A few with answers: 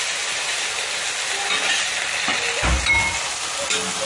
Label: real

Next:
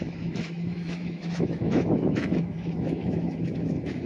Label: fake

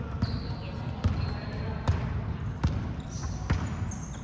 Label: real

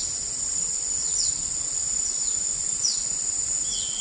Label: real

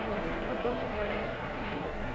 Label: fake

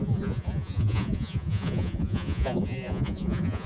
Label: fake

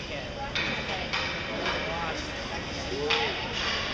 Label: real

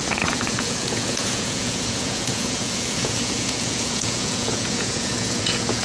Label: fake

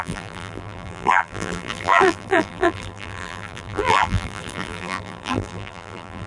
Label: fake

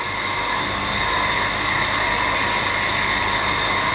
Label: real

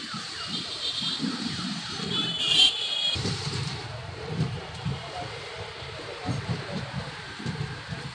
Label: fake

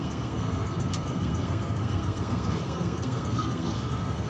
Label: fake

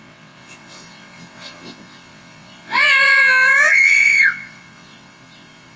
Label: fake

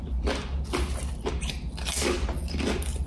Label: real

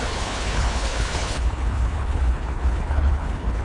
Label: fake